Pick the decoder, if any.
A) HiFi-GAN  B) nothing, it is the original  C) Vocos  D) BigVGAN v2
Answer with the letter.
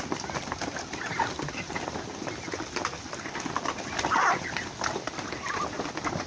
B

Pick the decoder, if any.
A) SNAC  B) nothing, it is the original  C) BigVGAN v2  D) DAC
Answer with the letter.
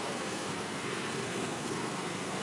A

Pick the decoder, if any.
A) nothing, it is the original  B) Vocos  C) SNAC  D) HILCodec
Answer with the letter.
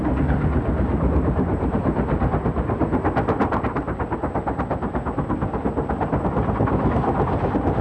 A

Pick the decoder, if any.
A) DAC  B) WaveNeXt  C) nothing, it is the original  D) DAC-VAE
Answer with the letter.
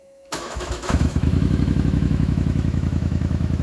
D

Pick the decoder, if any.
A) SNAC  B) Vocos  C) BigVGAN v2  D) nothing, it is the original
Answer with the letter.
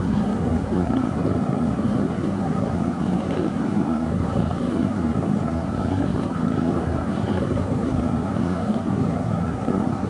A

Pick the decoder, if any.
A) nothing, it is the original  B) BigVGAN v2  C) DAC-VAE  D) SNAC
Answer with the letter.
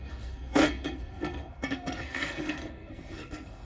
D